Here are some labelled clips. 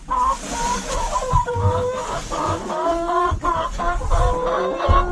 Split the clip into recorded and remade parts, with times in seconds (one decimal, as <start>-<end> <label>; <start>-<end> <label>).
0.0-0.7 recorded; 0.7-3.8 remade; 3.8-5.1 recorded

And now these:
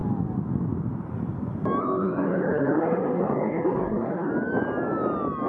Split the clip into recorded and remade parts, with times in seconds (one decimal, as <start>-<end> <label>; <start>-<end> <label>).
0.0-1.8 recorded; 1.8-4.3 remade; 4.3-5.5 recorded

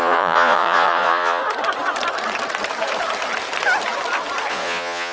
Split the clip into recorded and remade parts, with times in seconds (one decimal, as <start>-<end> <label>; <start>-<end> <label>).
0.0-1.4 remade; 1.4-4.5 recorded; 4.5-5.1 remade